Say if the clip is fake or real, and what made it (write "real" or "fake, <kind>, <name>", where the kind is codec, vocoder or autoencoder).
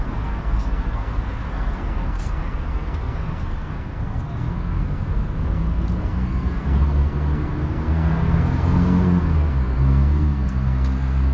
fake, codec, SNAC